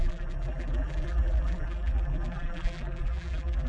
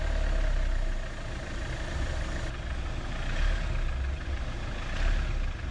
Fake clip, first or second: first